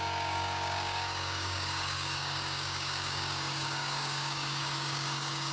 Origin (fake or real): fake